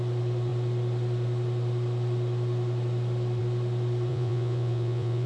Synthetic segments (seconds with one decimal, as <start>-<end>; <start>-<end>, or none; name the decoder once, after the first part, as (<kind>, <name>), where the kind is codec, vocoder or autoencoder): 4.1-5.3 (vocoder, Vocos)